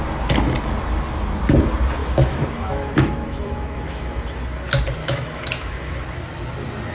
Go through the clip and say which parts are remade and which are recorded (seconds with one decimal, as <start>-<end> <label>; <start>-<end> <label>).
0.0-2.0 recorded; 2.0-4.4 remade; 4.4-5.0 recorded; 5.0-6.0 remade; 6.0-6.9 recorded